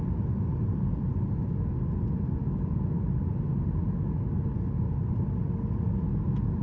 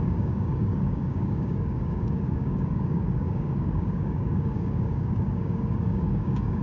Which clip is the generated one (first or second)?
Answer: second